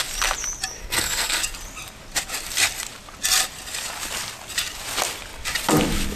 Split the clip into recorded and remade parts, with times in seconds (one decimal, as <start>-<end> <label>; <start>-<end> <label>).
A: 0.0-0.8 recorded; 0.8-1.4 remade; 1.4-6.2 recorded